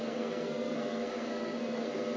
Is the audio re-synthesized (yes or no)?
yes